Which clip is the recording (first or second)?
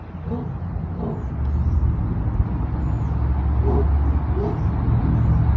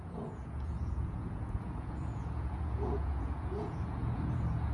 first